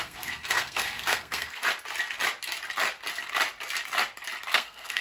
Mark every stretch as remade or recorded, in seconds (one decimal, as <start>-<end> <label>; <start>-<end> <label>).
0.0-1.6 remade; 1.6-4.5 recorded; 4.5-5.0 remade